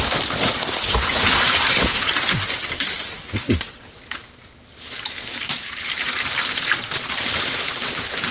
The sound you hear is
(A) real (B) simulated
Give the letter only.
A